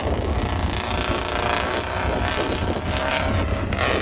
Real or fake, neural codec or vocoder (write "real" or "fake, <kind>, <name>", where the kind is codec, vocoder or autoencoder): real